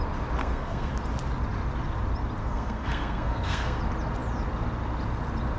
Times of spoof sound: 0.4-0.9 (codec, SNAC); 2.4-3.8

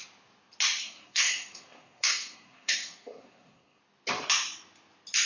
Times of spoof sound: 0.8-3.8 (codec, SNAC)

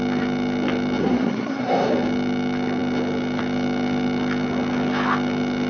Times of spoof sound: 1.0-1.9 (codec, SNAC)

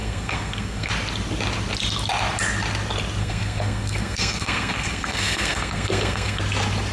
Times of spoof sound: 0.0-0.9 (codec, SNAC); 3.2-6.4

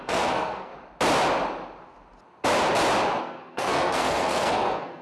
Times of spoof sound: 0.0-0.7 (codec, SNAC); 3.2-5.0